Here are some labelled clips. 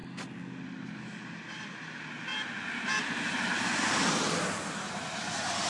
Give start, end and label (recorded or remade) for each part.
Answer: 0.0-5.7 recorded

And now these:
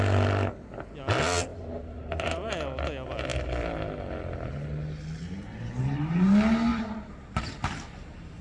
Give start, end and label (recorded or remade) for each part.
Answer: 0.0-1.5 recorded; 1.5-2.5 remade; 2.5-6.7 recorded; 6.7-8.4 remade

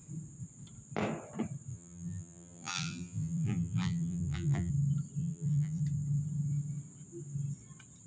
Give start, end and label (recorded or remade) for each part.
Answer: 0.0-1.7 recorded; 1.7-4.7 remade; 4.7-5.2 recorded; 5.2-5.8 remade; 5.8-8.1 recorded

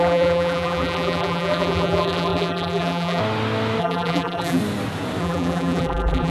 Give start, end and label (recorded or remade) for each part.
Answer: 0.0-3.2 remade; 3.2-3.8 recorded; 3.8-4.6 remade; 4.6-5.2 recorded; 5.2-6.3 remade

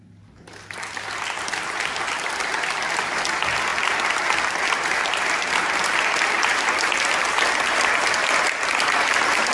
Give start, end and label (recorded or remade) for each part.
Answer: 0.0-3.7 recorded; 3.7-6.6 remade; 6.6-9.5 recorded